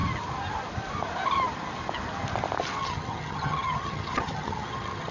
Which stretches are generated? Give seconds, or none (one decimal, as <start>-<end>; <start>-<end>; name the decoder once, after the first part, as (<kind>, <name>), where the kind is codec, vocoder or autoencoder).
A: 2.8-5.1 (vocoder, HiFi-GAN)